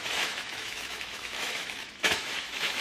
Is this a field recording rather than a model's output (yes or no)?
no